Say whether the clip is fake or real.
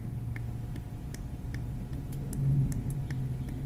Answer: real